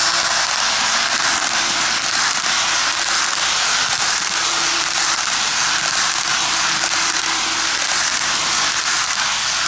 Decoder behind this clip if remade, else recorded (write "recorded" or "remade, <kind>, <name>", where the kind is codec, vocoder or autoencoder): recorded